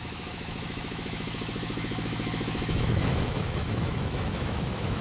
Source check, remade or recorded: remade